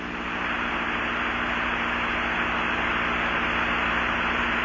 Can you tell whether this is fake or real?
real